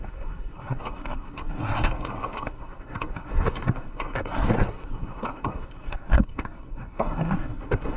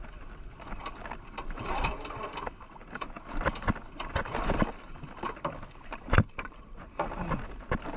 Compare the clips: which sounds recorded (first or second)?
second